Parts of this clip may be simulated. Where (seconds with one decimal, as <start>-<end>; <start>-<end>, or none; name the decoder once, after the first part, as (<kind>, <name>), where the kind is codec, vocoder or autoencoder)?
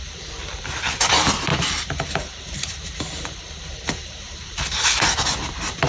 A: 1.5-5.0 (vocoder, BigVGAN v2)